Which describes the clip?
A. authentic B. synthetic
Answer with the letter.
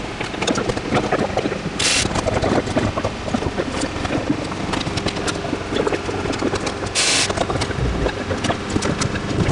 A